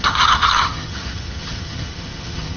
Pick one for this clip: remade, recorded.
remade